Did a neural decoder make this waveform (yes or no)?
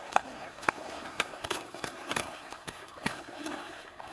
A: yes